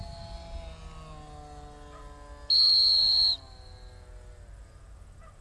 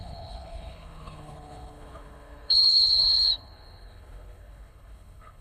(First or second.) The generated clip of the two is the second